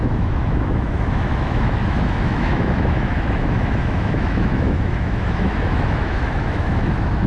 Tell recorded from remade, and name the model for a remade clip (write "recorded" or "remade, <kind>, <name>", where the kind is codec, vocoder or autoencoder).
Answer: remade, autoencoder, DAC-VAE